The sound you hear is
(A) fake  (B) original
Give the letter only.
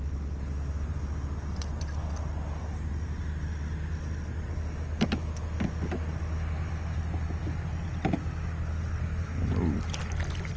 B